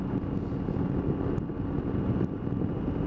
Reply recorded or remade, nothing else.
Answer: recorded